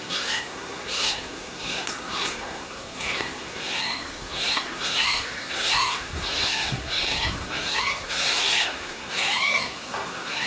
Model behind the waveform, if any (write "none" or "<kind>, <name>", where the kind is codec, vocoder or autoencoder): codec, SNAC